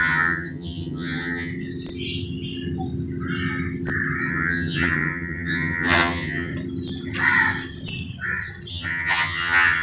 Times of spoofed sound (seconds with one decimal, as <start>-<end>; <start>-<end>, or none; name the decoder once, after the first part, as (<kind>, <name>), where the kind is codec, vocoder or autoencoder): 0.0-1.5 (vocoder, HiFi-GAN); 4.3-6.5; 8.7-9.8